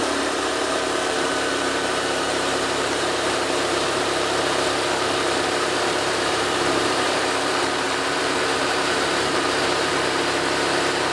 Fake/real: fake